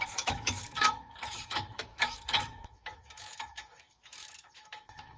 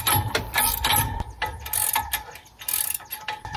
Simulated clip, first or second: first